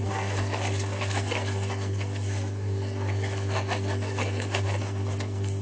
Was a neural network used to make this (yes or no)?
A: yes